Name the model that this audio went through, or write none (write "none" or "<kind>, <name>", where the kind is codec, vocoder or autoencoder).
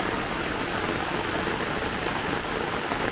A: none